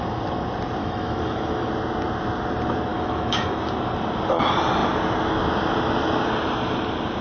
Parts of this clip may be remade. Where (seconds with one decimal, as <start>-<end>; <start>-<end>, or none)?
0.8-1.7; 2.9-3.6